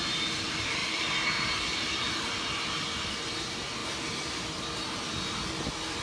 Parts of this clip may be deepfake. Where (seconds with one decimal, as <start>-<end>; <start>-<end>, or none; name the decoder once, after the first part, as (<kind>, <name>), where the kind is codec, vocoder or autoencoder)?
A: none